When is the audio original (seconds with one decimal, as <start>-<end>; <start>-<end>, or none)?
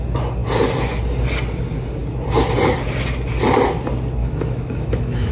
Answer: 0.0-4.2